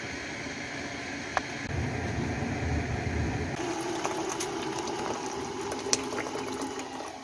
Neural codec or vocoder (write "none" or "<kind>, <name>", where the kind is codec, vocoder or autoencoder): none